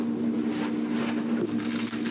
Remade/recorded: recorded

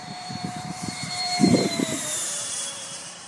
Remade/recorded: remade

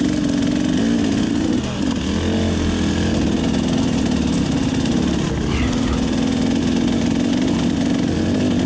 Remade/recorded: recorded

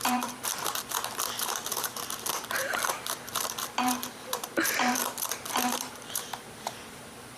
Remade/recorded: remade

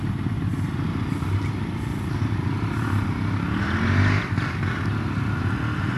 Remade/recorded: recorded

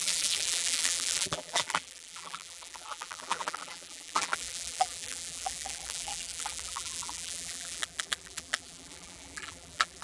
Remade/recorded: remade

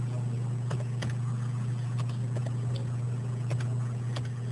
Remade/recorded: recorded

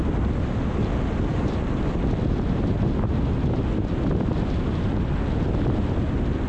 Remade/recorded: recorded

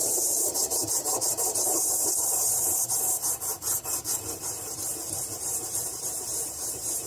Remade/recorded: remade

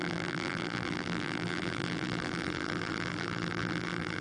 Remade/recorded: remade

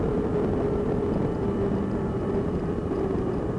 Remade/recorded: recorded